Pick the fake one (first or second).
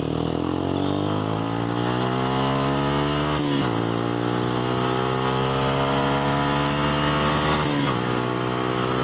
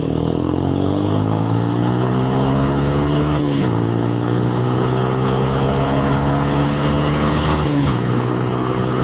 second